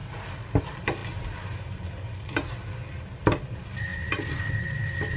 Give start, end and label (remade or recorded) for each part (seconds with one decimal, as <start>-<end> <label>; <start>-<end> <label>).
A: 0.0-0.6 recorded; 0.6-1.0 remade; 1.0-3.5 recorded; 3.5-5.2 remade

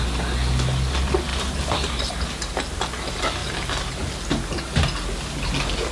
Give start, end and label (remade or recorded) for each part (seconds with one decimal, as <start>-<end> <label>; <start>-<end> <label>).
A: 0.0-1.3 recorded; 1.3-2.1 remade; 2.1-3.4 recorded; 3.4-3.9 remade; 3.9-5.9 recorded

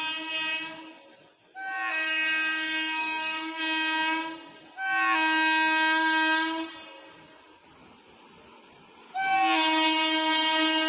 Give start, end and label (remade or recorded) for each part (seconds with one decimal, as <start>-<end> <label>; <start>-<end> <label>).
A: 0.0-1.9 recorded; 1.9-3.6 remade; 3.6-10.9 recorded

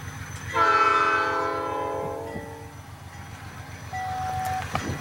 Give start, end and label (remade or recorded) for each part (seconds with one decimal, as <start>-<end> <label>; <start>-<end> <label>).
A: 0.0-5.0 recorded